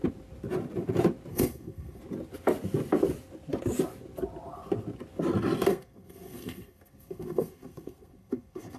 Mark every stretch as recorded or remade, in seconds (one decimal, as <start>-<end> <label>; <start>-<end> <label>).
0.0-1.3 recorded; 1.3-2.0 remade; 2.0-5.7 recorded; 5.7-8.8 remade